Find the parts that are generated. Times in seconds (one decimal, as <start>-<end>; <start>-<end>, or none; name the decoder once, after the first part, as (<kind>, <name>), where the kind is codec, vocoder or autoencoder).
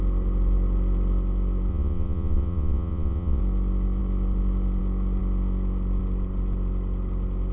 1.7-3.4 (vocoder, Vocos)